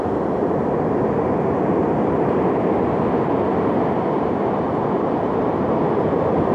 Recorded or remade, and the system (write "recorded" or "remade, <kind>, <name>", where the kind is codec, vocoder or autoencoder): recorded